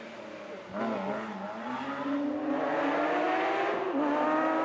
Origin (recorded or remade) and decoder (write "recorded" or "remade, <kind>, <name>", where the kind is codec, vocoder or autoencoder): recorded